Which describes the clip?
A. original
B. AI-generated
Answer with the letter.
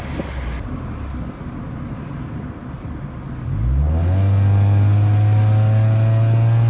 A